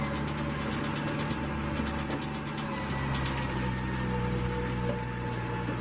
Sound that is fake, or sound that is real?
real